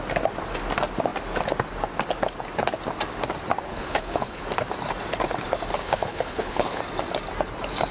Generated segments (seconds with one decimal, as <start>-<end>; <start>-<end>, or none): 3.7-4.4; 5.8-6.8

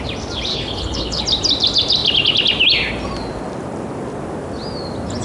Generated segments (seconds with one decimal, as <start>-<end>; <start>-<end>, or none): 0.5-1.2

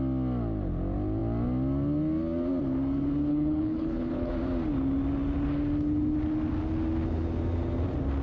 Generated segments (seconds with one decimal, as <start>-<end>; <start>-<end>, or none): 3.3-4.3

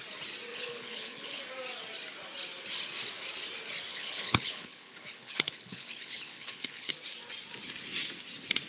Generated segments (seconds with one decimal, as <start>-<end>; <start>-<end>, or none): 0.5-1.4; 3.9-6.9

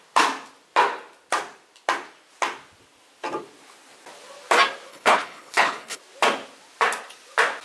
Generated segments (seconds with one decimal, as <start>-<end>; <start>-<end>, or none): 4.9-6.0